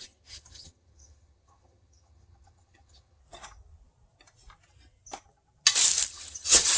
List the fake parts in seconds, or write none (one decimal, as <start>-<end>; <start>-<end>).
0.0-3.2; 6.1-6.8